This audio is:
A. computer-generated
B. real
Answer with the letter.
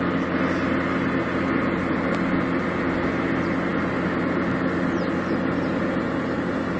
B